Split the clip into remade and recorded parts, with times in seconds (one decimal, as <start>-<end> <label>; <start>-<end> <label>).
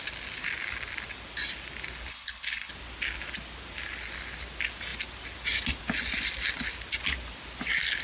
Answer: 0.0-2.1 recorded; 2.1-2.7 remade; 2.7-8.0 recorded